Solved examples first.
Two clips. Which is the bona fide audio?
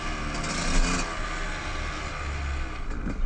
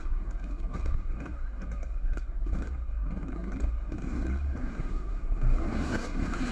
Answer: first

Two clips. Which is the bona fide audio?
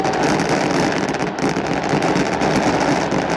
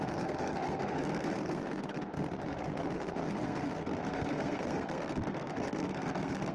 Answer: first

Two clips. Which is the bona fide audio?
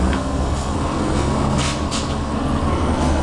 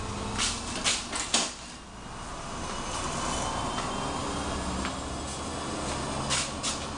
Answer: second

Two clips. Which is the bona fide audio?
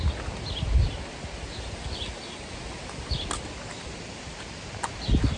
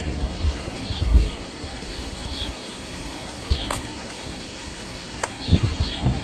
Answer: first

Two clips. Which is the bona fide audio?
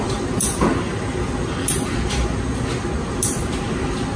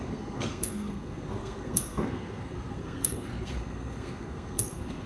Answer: first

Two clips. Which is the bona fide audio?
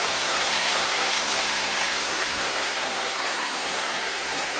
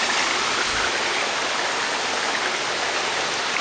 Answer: second